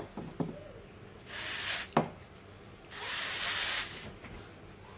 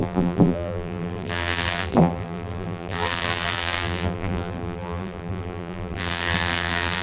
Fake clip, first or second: second